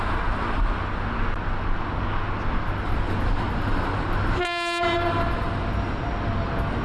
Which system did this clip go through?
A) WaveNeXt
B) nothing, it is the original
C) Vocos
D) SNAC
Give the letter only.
B